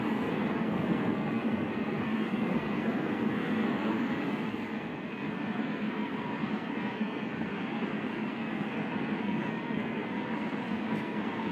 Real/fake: fake